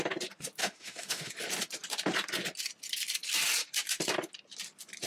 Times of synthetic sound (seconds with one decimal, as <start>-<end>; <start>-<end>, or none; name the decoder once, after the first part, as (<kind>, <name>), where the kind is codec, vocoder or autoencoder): 0.6-1.3 (autoencoder, DAC-VAE)